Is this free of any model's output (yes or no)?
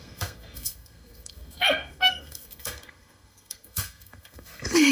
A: no